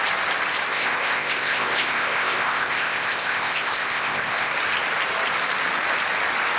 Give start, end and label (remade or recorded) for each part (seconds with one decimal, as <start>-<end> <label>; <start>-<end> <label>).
0.0-0.7 recorded; 0.7-4.5 remade; 4.5-6.6 recorded